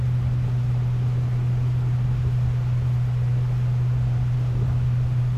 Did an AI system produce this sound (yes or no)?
no